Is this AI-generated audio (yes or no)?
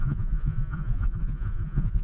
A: yes